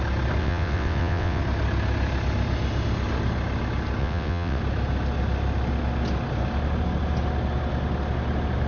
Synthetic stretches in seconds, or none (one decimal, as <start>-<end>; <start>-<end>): 0.4-1.4; 4.0-4.6